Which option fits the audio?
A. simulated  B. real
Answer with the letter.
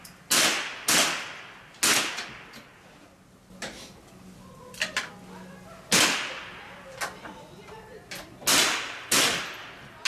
B